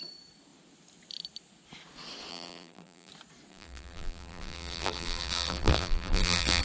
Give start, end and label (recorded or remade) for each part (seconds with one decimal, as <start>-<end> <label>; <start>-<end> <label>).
0.0-2.3 recorded; 2.3-3.1 remade; 3.1-3.5 recorded; 3.5-6.6 remade